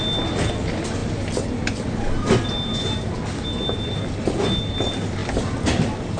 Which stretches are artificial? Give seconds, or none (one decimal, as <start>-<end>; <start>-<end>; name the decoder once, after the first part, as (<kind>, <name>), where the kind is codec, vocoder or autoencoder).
none